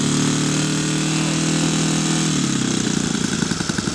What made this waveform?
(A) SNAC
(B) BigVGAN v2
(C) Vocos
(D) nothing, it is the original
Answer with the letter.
D